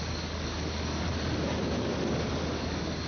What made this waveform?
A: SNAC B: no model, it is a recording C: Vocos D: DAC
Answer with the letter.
D